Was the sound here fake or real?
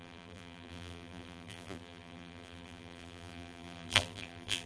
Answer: fake